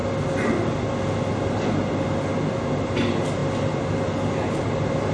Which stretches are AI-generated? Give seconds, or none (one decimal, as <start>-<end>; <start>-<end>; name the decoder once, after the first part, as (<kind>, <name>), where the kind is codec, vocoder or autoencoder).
none

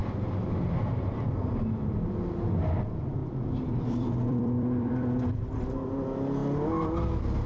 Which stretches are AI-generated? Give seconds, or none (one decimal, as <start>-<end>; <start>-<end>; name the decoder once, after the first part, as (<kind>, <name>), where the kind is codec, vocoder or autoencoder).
3.2-5.4 (vocoder, BigVGAN v2)

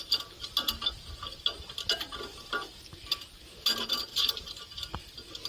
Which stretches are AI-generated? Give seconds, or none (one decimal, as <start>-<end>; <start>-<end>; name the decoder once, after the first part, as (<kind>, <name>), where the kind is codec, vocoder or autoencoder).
4.1-5.0 (vocoder, BigVGAN v2)

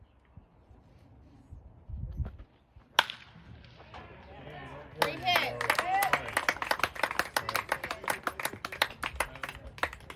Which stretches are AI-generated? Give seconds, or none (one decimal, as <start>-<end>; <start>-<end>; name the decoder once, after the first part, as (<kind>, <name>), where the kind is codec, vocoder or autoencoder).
none

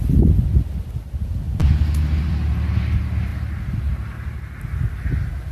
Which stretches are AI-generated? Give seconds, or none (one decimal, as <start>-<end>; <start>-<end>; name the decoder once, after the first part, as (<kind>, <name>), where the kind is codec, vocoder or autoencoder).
none